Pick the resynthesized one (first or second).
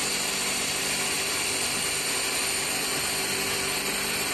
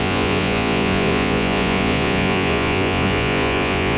second